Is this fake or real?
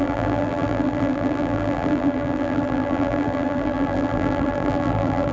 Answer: fake